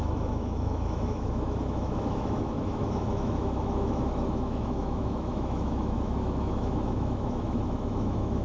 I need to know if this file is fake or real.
fake